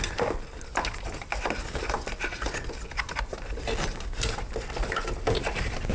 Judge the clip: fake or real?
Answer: real